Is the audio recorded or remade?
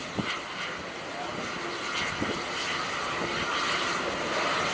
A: recorded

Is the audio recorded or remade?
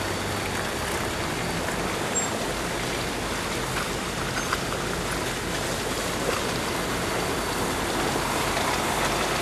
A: recorded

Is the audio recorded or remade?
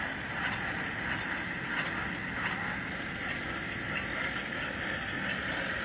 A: recorded